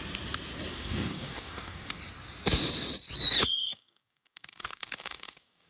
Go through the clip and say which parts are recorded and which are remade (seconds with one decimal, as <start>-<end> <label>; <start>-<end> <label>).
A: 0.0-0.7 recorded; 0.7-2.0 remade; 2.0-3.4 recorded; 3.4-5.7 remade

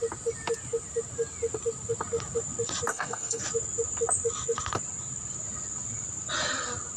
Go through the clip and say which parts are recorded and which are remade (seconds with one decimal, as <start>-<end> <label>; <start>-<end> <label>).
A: 0.0-2.9 recorded; 2.9-3.4 remade; 3.4-7.0 recorded

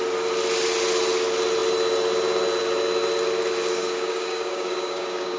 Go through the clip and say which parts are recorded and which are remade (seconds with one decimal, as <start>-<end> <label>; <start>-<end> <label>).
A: 0.0-3.7 recorded; 3.7-5.4 remade

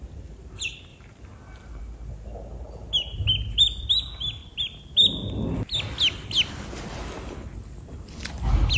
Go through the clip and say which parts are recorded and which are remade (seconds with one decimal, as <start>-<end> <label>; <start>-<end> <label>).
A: 0.0-8.8 recorded